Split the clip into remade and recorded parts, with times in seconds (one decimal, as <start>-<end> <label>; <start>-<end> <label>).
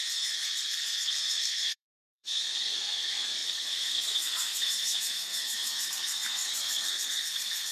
0.0-7.7 remade